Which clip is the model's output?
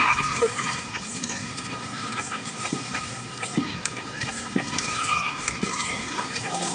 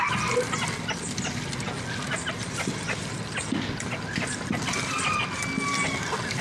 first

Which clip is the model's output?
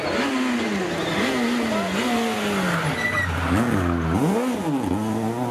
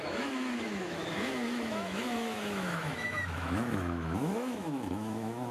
second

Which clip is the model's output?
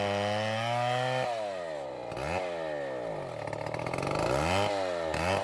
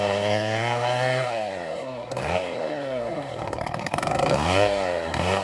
second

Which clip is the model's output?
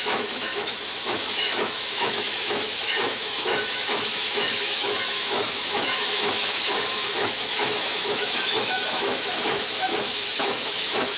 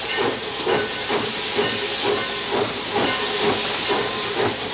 first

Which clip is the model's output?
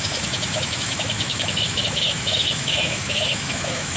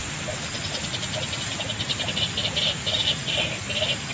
first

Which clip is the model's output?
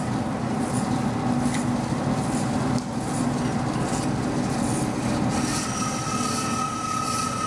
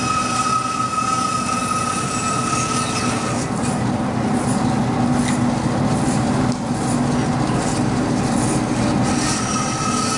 first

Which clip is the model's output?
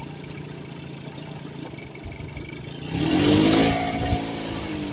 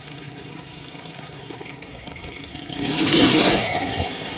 second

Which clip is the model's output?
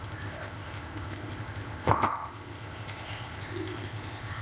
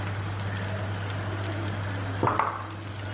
first